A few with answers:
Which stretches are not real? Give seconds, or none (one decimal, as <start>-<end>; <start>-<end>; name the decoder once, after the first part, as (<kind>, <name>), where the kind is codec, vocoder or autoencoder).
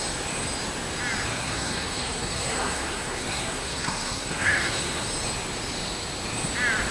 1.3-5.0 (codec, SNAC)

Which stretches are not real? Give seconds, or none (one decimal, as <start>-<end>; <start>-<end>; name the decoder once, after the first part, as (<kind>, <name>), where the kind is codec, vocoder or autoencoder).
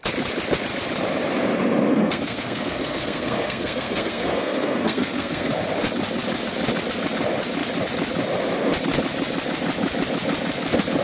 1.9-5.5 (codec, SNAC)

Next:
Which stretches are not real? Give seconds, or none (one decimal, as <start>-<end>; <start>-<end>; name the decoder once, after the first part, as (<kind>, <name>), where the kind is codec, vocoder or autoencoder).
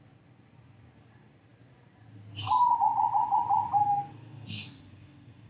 4.1-5.5 (codec, SNAC)